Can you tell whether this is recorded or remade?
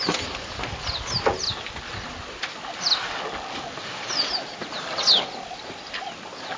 recorded